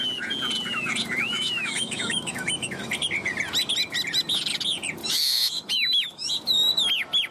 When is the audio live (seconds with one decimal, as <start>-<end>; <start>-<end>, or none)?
0.0-1.3; 2.9-5.0; 6.3-7.3